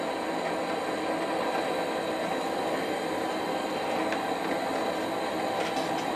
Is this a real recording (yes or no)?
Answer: yes